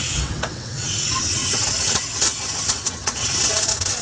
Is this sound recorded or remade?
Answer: remade